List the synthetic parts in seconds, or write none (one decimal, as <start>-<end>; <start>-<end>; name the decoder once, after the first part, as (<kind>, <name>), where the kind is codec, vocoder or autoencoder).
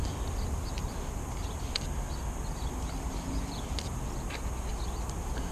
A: none